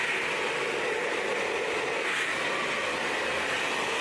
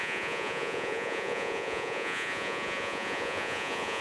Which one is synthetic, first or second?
second